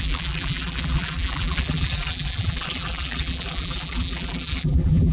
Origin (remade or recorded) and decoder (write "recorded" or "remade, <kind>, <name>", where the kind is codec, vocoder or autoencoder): remade, vocoder, BigVGAN v2